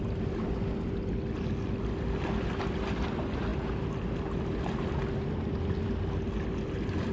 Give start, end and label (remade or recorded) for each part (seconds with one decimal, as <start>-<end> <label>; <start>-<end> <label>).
0.0-7.1 recorded